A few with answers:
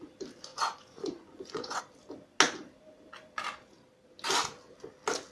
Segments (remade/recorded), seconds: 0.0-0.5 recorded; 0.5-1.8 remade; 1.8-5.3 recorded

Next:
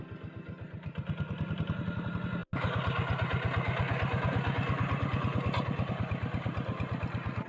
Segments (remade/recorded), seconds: 0.0-7.5 recorded

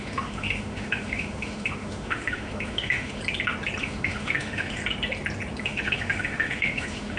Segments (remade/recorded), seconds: 0.0-3.2 remade; 3.2-3.8 recorded; 3.8-4.8 remade; 4.8-5.6 recorded; 5.6-7.2 remade

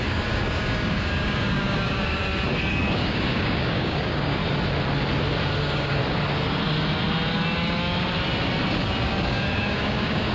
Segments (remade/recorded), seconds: 0.0-2.2 remade; 2.2-2.9 recorded; 2.9-4.4 remade; 4.4-5.6 recorded; 5.6-6.0 remade; 6.0-9.2 recorded; 9.2-10.3 remade

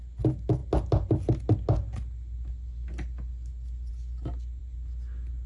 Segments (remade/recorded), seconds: 0.0-5.5 recorded

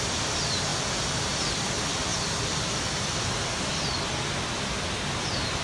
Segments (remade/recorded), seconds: 0.0-5.6 recorded